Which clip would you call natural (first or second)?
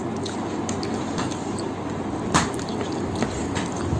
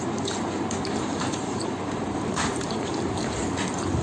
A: first